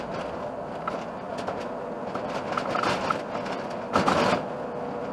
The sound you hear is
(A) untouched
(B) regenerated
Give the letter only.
A